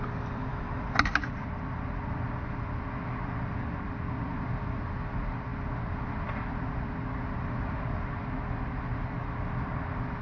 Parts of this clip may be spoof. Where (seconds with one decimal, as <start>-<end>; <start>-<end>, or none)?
none